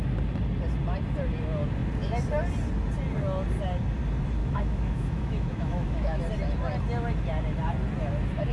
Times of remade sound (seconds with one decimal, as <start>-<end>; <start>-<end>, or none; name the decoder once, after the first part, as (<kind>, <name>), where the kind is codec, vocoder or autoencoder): 4.4-6.2 (autoencoder, DAC-VAE)